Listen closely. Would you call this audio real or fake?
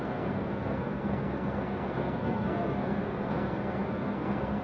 fake